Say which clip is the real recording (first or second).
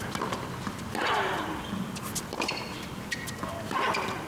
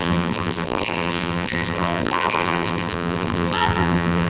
first